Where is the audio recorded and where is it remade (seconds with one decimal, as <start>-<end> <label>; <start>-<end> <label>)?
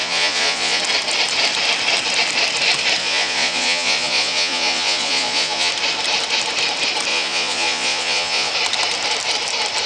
0.0-0.8 remade; 0.8-3.0 recorded; 3.0-5.7 remade; 5.7-7.1 recorded; 7.1-8.5 remade; 8.5-9.9 recorded